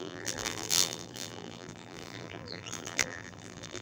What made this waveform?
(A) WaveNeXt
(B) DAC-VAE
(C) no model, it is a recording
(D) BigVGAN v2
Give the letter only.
D